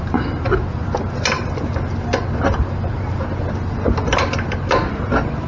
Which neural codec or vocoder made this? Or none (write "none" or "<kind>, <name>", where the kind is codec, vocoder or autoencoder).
none